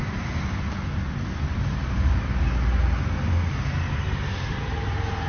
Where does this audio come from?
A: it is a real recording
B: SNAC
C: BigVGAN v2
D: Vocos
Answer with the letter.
A